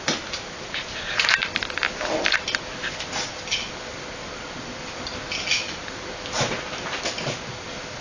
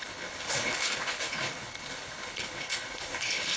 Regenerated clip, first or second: second